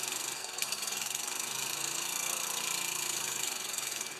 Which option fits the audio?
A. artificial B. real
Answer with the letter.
A